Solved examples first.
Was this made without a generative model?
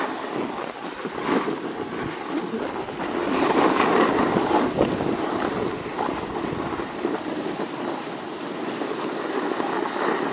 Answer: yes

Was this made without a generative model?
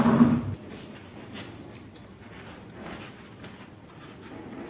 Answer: yes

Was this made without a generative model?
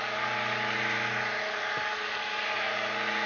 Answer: yes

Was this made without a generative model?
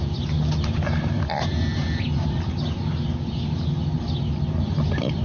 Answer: yes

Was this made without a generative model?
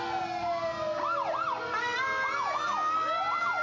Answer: yes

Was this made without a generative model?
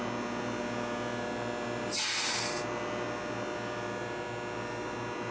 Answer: yes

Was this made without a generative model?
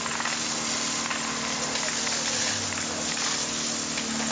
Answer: yes